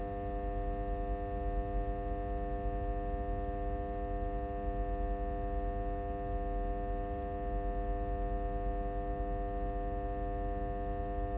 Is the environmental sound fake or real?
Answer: real